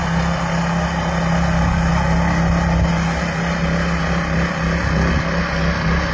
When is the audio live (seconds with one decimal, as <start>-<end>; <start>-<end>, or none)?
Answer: 0.0-6.1